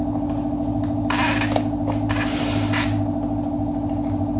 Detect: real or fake real